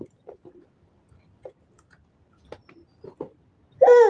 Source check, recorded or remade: remade